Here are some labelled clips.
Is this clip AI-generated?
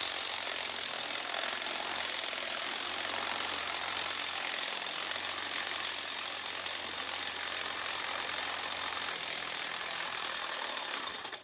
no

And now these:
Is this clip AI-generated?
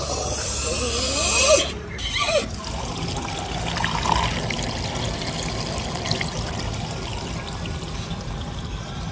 no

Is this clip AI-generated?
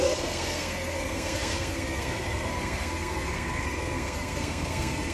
yes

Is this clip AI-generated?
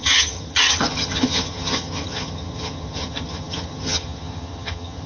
yes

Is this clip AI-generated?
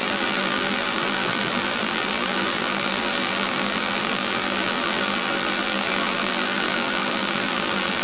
yes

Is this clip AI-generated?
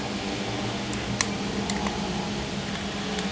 no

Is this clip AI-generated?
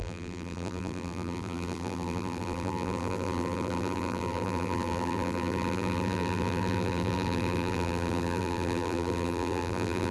yes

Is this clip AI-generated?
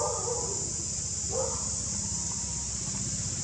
no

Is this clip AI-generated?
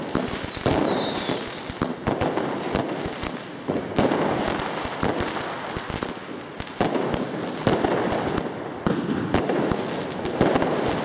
no